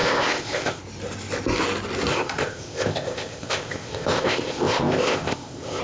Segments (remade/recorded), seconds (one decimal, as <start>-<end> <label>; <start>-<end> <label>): 0.0-0.8 remade; 0.8-2.1 recorded; 2.1-5.8 remade